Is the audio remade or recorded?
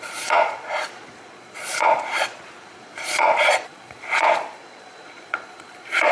remade